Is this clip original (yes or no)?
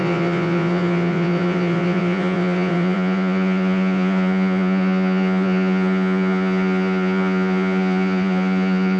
no